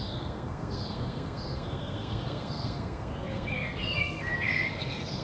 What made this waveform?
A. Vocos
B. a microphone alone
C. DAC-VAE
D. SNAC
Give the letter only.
D